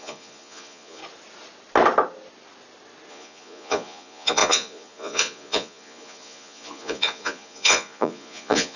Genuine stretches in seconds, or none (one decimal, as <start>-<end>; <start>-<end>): 1.0-3.1